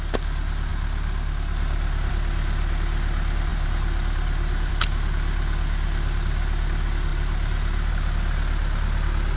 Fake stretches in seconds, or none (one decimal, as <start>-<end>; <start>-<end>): 3.5-4.7